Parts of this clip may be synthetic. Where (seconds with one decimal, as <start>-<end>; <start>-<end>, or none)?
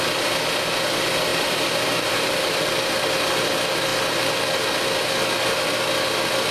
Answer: 1.3-2.6